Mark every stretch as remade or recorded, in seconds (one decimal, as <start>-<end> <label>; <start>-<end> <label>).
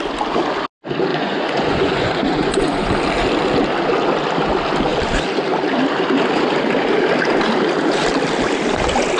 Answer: 0.0-1.1 recorded; 1.1-2.9 remade; 2.9-9.2 recorded